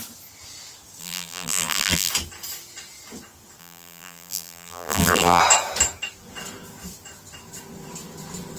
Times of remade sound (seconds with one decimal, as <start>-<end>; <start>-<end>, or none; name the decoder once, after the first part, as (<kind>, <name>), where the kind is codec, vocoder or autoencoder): 1.0-2.1 (vocoder, BigVGAN v2); 3.6-5.4